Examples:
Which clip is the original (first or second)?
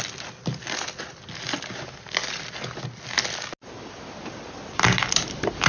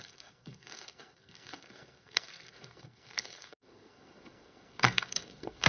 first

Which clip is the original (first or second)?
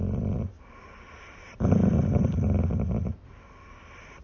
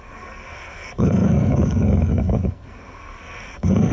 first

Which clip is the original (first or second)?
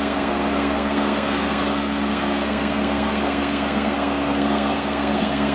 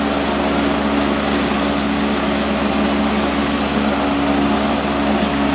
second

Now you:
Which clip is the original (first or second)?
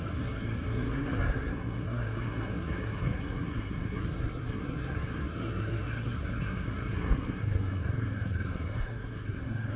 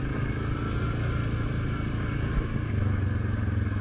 second